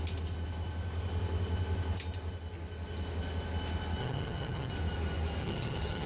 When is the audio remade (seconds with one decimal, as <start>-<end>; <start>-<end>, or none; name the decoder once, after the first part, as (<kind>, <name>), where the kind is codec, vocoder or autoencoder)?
4.0-4.7 (vocoder, HiFi-GAN); 5.4-6.1